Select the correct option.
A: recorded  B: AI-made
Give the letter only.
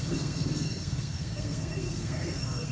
B